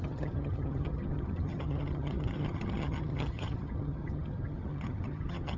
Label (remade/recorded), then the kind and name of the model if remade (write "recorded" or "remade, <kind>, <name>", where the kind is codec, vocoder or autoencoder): remade, vocoder, HiFi-GAN